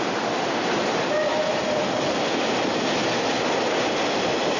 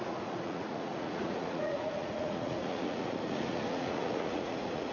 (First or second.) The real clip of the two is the first